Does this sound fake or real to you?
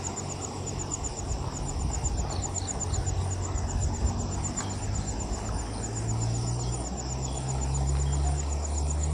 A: real